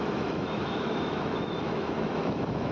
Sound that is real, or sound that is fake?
fake